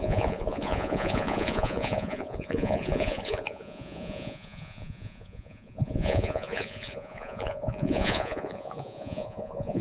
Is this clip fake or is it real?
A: fake